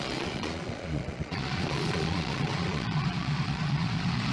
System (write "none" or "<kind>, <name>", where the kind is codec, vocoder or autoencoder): vocoder, Vocos